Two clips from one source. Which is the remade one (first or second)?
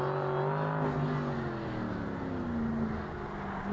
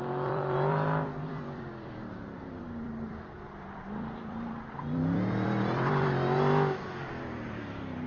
second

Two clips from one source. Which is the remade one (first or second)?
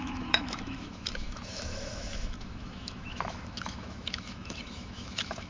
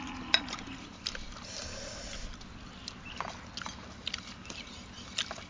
first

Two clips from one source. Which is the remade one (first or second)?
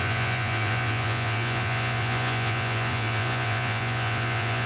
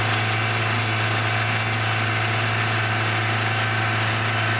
first